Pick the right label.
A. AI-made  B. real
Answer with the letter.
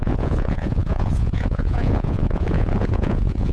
A